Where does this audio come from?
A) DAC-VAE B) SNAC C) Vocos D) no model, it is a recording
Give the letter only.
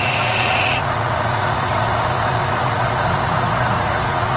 C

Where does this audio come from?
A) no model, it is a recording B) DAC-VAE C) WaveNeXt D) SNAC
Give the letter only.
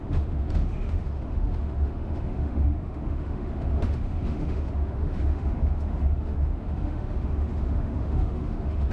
B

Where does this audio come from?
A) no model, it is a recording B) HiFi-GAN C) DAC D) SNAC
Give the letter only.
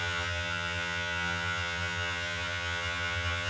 B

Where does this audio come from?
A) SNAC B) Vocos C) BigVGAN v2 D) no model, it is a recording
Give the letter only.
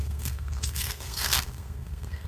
A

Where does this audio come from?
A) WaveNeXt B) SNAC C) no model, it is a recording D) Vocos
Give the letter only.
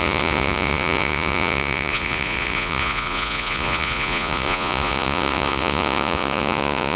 D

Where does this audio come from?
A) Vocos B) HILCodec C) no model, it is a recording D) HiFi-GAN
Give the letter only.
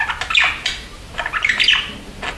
C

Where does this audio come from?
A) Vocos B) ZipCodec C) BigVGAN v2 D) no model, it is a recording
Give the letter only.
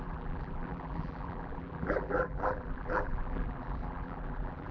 C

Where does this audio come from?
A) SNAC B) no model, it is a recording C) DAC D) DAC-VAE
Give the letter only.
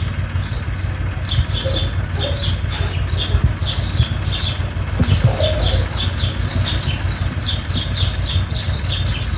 B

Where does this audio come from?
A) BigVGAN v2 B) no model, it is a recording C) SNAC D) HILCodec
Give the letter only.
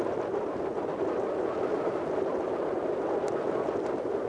B